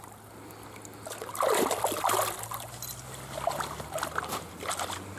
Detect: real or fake real